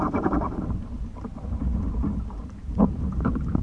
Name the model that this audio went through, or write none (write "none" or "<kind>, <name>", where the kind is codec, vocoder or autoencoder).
vocoder, BigVGAN v2